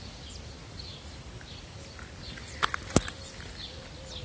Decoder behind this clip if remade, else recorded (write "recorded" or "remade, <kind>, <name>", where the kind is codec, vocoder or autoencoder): recorded